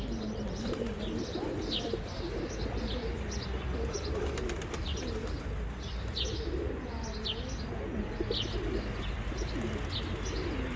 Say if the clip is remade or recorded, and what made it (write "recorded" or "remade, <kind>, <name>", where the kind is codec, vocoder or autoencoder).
recorded